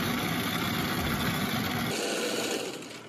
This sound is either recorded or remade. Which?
recorded